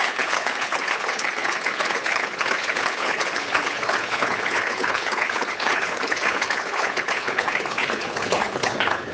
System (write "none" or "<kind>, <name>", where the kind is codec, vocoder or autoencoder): codec, HILCodec